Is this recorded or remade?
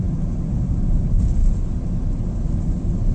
recorded